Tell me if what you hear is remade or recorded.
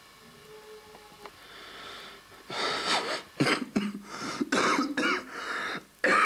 recorded